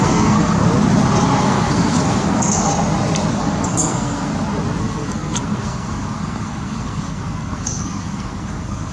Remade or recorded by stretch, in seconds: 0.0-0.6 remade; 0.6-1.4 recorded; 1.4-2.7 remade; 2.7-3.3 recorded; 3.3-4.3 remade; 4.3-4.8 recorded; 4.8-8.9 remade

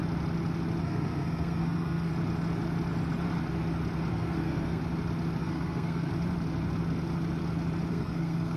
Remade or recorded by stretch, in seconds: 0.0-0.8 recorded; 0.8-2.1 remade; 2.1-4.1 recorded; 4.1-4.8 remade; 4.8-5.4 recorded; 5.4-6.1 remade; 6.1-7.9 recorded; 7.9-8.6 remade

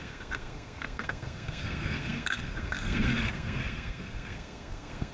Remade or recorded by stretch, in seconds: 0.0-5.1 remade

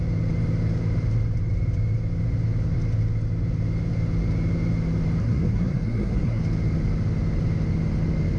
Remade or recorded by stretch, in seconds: 0.0-5.2 recorded; 5.2-6.4 remade; 6.4-8.4 recorded

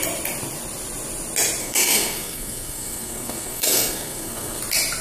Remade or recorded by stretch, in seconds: 0.0-1.6 recorded; 1.6-4.6 remade; 4.6-5.0 recorded

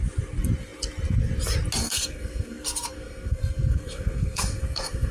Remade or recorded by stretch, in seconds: 0.0-1.8 recorded; 1.8-5.1 remade

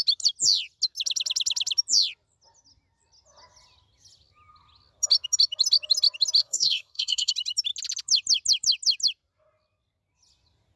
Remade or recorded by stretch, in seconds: 0.0-6.4 recorded; 6.4-7.3 remade; 7.3-10.8 recorded